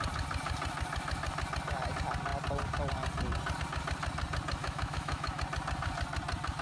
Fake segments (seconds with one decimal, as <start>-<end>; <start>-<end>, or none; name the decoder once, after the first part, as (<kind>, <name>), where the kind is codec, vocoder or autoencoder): 4.6-5.4 (autoencoder, DAC-VAE)